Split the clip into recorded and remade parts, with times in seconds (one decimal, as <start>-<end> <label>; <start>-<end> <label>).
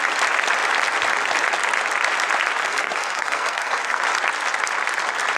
0.0-2.6 recorded; 2.6-4.0 remade; 4.0-5.4 recorded